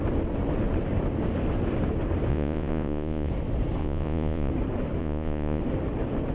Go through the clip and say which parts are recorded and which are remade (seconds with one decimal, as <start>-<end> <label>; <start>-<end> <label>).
0.0-2.3 recorded; 2.3-3.3 remade; 3.3-3.8 recorded; 3.8-4.5 remade; 4.5-5.0 recorded; 5.0-5.6 remade; 5.6-6.3 recorded